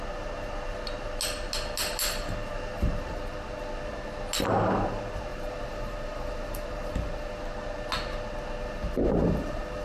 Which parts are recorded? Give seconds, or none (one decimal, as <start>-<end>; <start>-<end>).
0.0-2.5; 3.2-5.3; 6.9-9.8